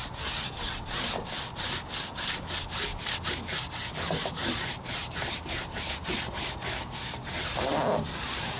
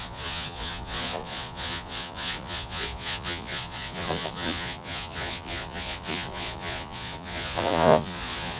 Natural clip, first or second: first